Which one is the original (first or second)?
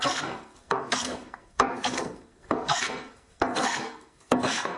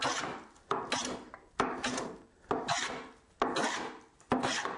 second